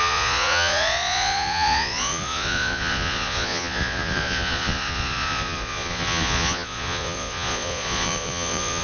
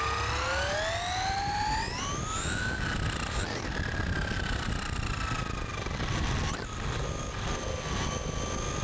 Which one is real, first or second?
second